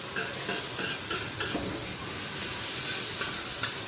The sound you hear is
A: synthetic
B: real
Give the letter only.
B